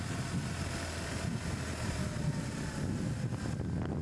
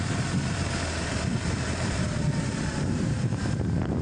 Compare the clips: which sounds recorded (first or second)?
first